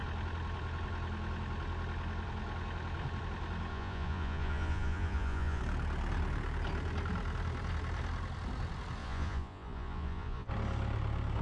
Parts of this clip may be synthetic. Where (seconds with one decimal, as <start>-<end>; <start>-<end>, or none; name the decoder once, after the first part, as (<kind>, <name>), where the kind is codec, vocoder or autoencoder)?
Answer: 3.7-5.6 (vocoder, Vocos); 9.0-10.5